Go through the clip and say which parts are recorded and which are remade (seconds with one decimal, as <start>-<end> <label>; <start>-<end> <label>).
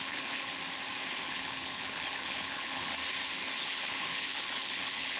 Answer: 0.0-0.5 remade; 0.5-1.1 recorded; 1.1-2.9 remade; 2.9-3.6 recorded; 3.6-5.2 remade